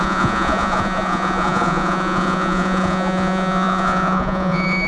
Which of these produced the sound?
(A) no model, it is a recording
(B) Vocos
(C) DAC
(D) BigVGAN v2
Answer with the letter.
B